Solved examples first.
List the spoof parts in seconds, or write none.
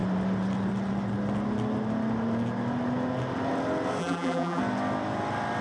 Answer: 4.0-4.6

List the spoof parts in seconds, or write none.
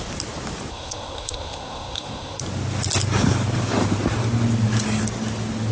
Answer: 0.7-2.4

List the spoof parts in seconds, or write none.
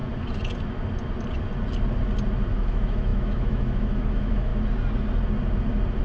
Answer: 2.5-4.5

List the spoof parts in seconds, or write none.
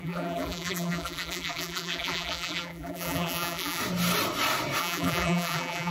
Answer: 0.0-3.8; 4.8-5.9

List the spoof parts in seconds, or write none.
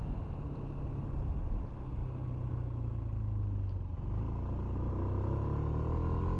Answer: none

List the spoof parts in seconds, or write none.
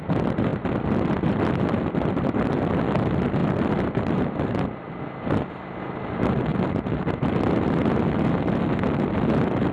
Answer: 0.0-0.5; 1.1-3.4; 5.9-6.5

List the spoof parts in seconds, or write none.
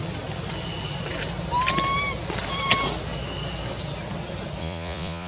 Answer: 4.6-5.3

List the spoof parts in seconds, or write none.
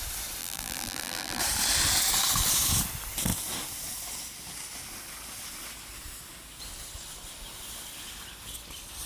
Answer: 0.4-1.4